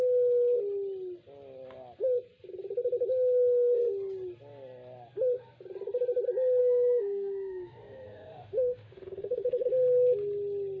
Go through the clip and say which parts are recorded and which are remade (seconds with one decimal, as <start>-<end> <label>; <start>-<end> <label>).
0.0-6.6 recorded; 6.6-9.7 remade; 9.7-10.8 recorded

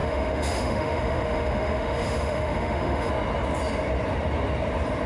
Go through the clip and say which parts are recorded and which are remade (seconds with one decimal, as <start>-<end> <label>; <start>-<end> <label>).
0.0-3.1 remade; 3.1-5.1 recorded

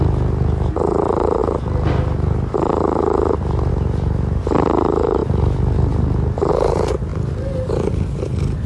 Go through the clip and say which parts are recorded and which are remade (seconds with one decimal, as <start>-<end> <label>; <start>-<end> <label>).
0.0-8.7 recorded